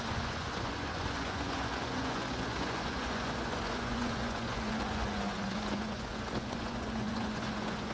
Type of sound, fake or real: fake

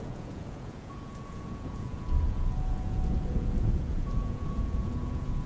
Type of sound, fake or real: fake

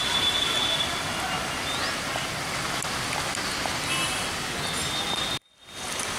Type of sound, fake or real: real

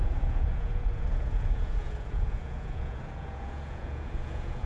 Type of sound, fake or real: fake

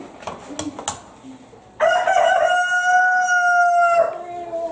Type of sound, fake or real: real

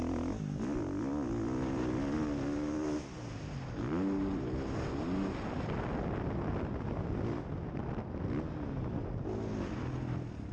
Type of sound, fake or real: real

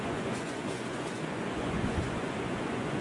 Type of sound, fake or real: fake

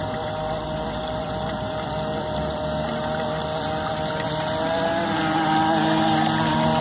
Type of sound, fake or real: real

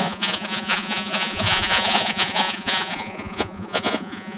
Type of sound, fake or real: fake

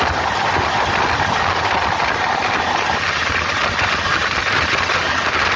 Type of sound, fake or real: real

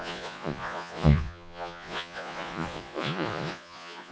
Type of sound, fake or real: fake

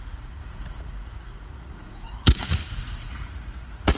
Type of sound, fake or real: fake